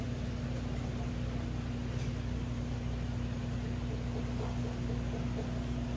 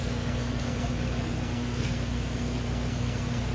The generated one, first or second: second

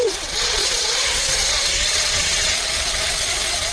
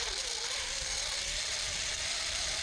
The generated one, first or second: first